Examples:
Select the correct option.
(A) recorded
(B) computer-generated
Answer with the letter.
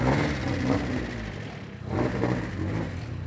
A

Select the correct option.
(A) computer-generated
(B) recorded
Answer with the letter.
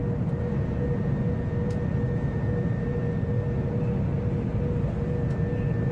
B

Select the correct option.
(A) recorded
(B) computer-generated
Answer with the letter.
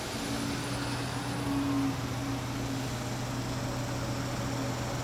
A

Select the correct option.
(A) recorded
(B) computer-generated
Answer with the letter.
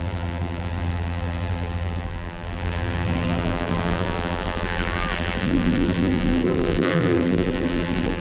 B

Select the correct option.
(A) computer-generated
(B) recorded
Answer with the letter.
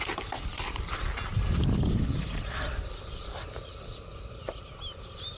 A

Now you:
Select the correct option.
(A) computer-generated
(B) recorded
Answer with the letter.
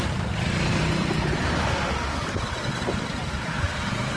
A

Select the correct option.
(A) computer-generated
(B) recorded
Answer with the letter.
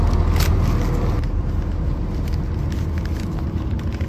B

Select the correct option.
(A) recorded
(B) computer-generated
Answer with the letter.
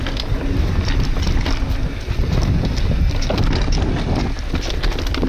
A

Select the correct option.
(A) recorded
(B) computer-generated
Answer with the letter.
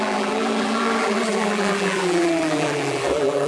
B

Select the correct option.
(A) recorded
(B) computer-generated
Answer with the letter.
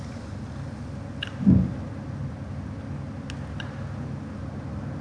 A